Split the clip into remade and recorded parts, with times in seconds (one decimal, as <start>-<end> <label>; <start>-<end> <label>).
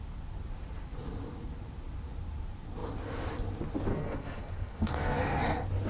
0.0-3.9 recorded; 3.9-5.4 remade; 5.4-5.9 recorded